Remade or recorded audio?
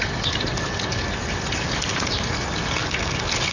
recorded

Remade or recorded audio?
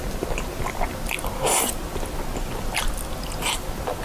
recorded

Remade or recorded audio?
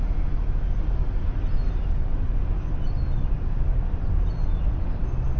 recorded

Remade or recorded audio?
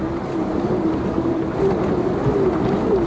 recorded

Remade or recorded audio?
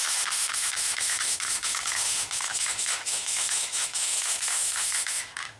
remade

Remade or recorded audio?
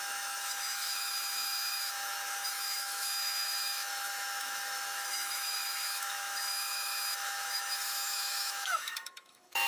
remade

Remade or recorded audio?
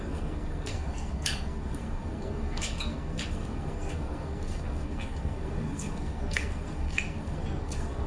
remade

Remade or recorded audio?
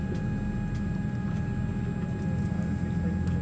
recorded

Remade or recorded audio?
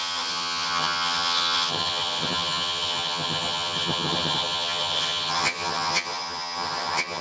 remade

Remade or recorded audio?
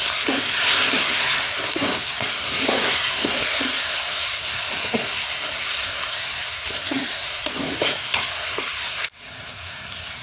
remade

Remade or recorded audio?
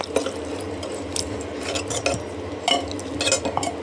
recorded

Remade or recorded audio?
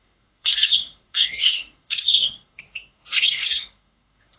remade